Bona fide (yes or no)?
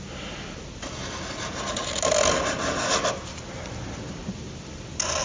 yes